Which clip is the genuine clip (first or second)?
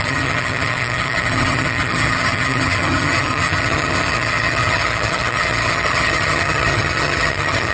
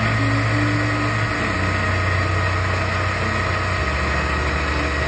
second